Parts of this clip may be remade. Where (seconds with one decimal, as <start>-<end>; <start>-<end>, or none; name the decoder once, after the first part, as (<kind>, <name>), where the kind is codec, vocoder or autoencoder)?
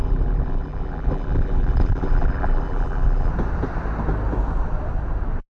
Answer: 0.0-3.3 (vocoder, BigVGAN v2)